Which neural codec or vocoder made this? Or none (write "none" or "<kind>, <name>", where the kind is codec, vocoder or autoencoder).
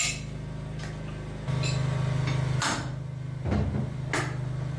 none